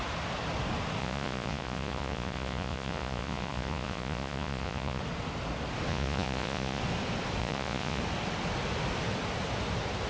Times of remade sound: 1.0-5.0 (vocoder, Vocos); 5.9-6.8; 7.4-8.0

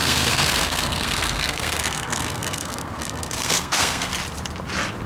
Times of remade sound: 0.0-4.1 (codec, SNAC)

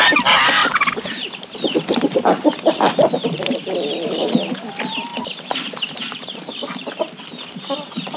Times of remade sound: 0.6-4.2 (vocoder, BigVGAN v2); 5.1-7.2

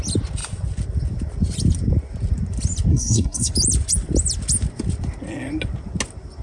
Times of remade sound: 2.9-3.5 (codec, SNAC)

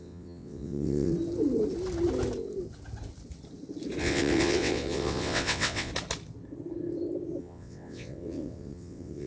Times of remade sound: 0.0-1.1 (vocoder, WaveNeXt); 4.0-5.9; 7.4-9.3

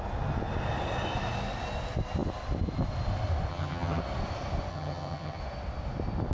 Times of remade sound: 3.5-4.0 (vocoder, HiFi-GAN); 4.7-5.4